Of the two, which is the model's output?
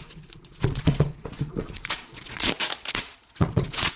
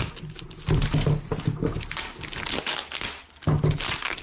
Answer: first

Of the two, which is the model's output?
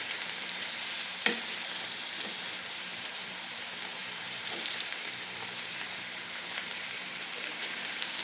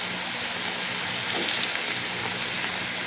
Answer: first